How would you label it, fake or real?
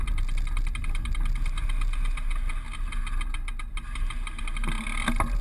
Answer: real